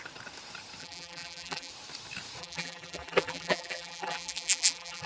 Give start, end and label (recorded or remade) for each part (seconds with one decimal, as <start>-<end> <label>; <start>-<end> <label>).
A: 0.0-0.8 recorded; 0.8-1.7 remade; 1.7-2.4 recorded; 2.4-5.1 remade